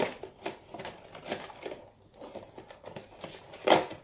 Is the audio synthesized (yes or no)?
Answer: no